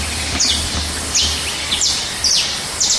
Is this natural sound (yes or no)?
yes